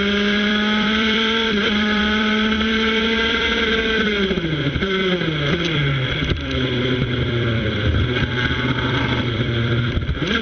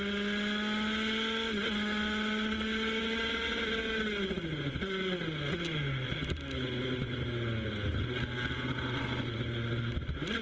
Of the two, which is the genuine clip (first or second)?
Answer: second